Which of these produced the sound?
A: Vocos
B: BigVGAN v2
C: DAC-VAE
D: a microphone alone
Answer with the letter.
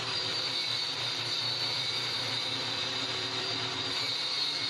B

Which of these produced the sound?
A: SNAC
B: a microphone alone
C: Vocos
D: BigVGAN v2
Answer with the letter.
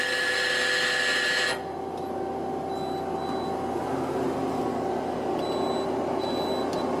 B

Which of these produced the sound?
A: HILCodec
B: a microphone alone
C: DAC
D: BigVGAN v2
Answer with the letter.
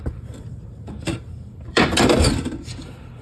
D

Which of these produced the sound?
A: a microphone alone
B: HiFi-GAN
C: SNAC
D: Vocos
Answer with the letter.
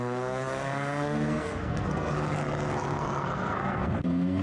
C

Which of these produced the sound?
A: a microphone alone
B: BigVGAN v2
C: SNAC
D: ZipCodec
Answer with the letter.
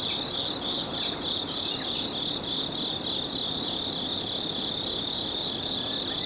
B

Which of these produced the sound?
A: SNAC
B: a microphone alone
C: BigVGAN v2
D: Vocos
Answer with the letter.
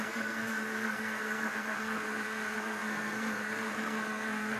A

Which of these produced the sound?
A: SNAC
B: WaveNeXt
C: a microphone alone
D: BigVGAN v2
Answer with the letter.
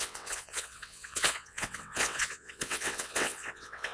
B